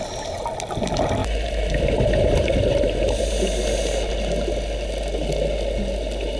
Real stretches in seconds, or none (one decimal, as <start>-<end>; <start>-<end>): 0.0-1.2; 3.4-6.4